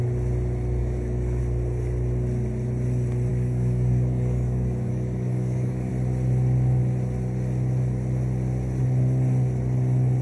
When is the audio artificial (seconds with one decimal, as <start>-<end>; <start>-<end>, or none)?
0.8-1.4; 3.3-5.9